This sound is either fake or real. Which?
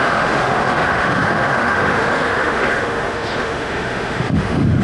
fake